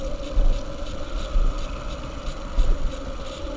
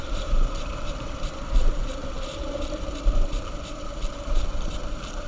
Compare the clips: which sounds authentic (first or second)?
first